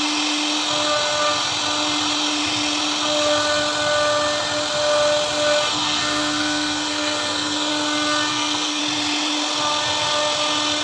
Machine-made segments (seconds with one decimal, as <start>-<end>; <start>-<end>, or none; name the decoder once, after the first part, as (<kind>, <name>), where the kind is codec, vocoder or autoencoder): 5.7-7.7 (codec, SNAC); 8.3-8.8